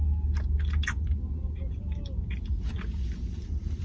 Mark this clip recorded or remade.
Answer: recorded